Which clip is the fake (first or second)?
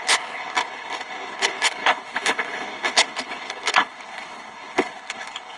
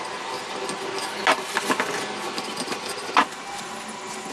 first